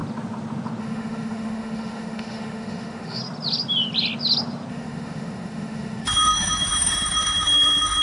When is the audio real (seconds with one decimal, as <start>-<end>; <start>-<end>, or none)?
0.0-0.8; 3.2-4.7